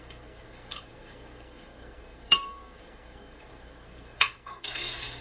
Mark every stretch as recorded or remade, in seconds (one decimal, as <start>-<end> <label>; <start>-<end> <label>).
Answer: 0.0-5.2 remade